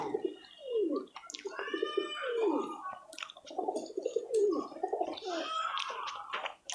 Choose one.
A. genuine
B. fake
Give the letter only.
A